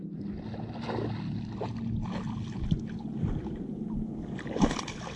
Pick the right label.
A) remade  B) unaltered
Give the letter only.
B